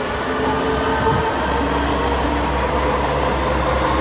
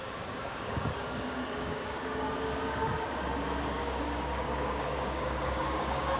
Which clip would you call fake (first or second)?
second